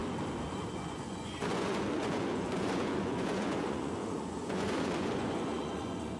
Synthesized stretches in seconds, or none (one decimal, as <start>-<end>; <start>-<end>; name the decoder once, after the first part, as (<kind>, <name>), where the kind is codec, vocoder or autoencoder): 0.7-6.2 (vocoder, Vocos)